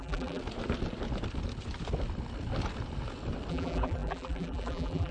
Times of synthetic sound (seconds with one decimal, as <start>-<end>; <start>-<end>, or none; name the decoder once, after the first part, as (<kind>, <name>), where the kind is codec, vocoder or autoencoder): 0.0-0.4 (vocoder, BigVGAN v2); 3.5-5.1